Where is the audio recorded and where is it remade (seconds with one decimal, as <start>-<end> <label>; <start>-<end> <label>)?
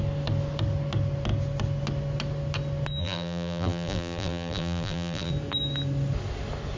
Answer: 0.0-3.0 recorded; 3.0-5.3 remade; 5.3-6.8 recorded